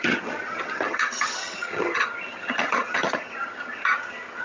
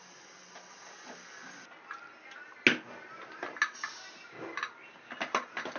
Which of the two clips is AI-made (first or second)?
first